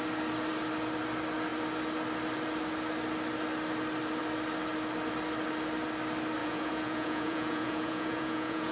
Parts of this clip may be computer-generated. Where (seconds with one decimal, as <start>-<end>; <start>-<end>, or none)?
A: 6.4-8.7